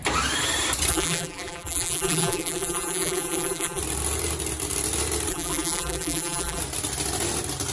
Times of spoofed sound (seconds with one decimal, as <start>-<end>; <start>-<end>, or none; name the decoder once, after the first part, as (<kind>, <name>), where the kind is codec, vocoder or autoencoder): 0.9-3.8 (vocoder, BigVGAN v2); 5.3-6.6